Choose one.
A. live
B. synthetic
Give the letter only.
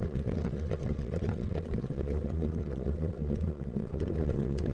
B